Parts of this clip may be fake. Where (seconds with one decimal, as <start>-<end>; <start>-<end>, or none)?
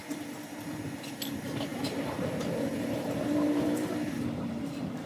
1.7-3.9